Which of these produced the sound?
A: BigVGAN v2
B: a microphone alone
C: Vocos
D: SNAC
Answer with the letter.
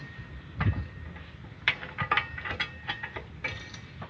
A